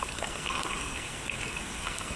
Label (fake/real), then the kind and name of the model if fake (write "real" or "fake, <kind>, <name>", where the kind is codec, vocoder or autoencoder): fake, codec, SNAC